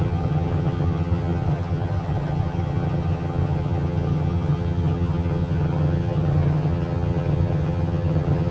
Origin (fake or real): fake